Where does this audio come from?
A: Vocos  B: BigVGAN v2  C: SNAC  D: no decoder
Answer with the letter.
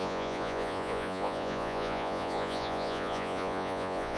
A